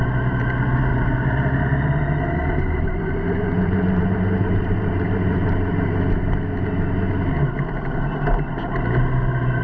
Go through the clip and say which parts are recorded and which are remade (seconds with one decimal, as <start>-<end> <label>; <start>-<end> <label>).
0.0-0.9 recorded; 0.9-6.0 remade; 6.0-9.6 recorded